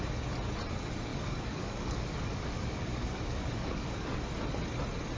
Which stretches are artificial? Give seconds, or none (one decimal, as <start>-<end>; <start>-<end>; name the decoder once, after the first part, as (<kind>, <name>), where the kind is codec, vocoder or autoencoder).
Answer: 1.1-4.2 (codec, DAC)